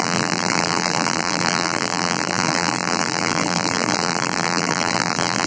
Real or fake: fake